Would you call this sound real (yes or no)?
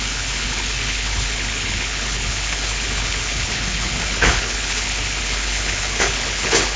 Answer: no